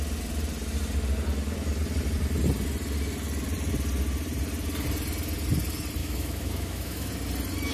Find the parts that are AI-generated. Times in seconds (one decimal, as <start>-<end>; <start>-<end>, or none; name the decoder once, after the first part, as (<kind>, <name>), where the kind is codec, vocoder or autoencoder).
6.0-7.1 (autoencoder, DAC-VAE)